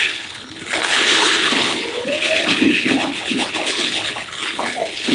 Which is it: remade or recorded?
remade